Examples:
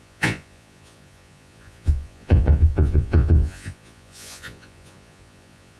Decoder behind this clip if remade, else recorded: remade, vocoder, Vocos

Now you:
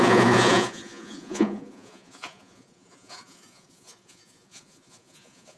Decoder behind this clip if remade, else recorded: remade, vocoder, Vocos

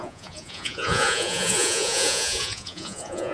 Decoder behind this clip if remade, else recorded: remade, vocoder, Vocos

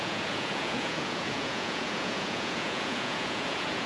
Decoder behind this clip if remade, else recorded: remade, vocoder, Vocos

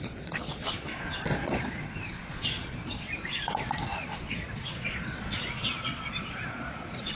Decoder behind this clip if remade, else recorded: remade, vocoder, Vocos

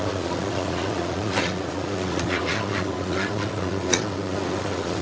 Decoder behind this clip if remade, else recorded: remade, vocoder, Vocos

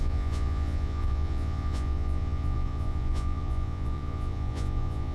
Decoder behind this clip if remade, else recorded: remade, vocoder, Vocos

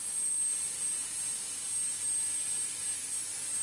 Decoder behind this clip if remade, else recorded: recorded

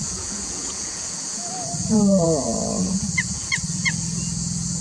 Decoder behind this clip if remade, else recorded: remade, vocoder, Vocos